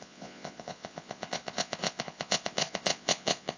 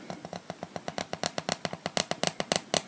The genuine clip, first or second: second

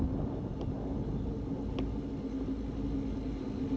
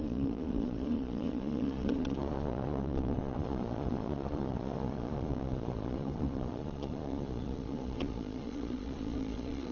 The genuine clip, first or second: first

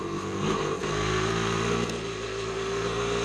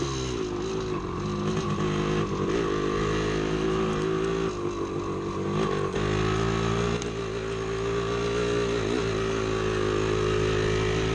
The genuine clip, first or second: second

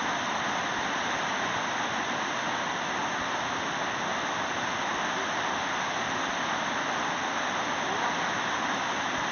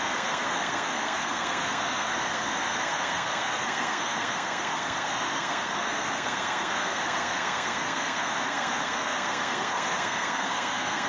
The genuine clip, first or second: first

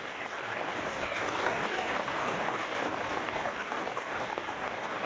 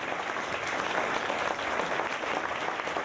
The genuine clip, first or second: second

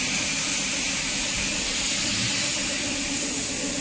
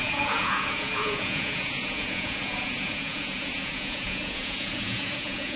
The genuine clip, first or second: first